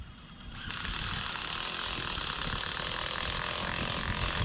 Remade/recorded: recorded